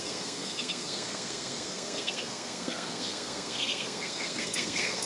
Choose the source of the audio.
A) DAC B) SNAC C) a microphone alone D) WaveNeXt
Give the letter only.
B